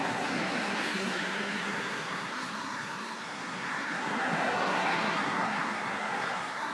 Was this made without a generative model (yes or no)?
no